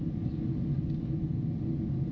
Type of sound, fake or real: real